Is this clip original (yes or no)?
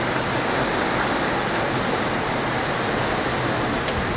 yes